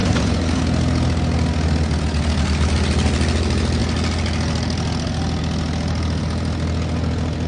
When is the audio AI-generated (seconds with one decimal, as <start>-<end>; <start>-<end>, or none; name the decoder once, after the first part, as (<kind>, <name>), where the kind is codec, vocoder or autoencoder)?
0.0-0.6 (vocoder, Vocos)